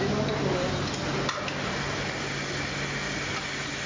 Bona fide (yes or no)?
yes